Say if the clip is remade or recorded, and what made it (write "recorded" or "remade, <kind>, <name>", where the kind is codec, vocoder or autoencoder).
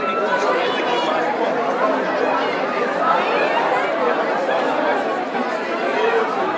recorded